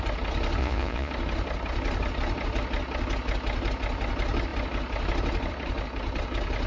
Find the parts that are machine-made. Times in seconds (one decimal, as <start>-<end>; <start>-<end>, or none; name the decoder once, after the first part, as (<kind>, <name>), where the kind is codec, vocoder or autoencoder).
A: 0.6-1.1 (vocoder, Vocos)